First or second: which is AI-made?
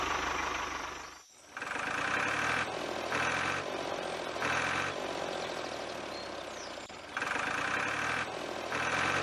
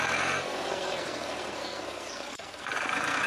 second